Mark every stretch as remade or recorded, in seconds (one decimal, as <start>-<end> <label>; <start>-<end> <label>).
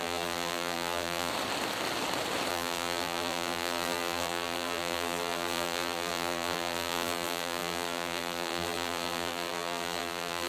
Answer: 0.0-1.3 remade; 1.3-2.5 recorded; 2.5-10.5 remade